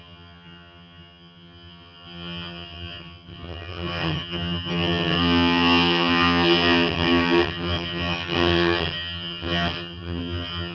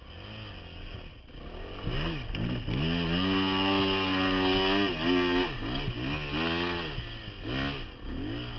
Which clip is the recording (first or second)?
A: second